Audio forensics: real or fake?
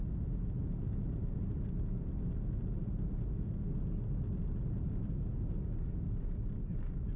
real